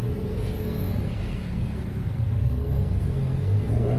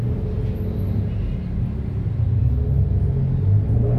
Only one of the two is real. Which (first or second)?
second